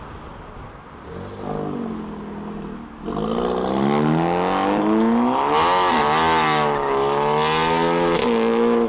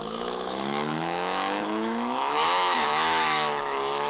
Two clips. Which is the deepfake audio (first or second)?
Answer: second